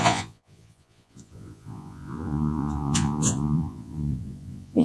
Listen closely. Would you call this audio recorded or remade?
remade